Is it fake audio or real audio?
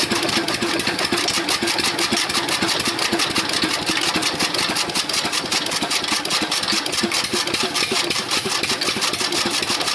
real